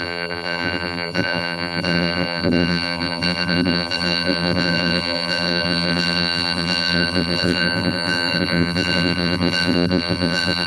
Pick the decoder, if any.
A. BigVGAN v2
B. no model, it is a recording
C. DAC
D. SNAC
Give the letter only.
A